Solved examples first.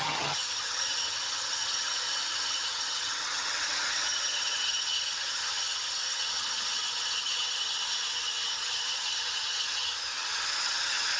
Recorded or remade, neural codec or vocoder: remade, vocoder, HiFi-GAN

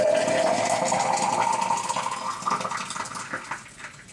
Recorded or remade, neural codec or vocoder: recorded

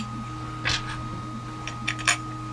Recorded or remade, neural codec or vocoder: recorded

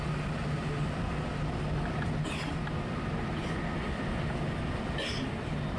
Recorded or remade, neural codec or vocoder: recorded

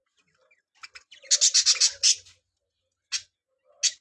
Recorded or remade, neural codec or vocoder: recorded